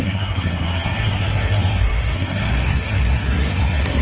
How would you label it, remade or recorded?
remade